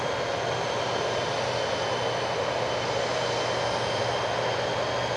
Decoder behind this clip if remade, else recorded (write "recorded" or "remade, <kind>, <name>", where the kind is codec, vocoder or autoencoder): recorded